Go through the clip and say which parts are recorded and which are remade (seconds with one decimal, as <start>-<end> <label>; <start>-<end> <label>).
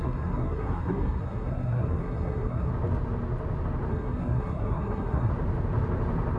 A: 0.0-2.7 remade; 2.7-3.9 recorded; 3.9-5.3 remade; 5.3-6.4 recorded